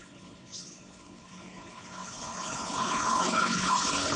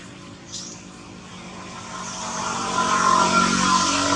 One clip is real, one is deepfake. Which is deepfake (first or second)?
first